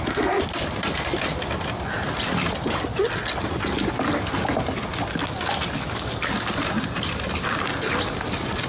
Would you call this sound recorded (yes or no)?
yes